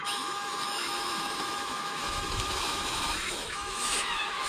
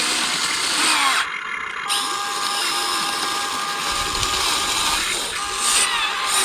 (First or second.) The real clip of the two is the second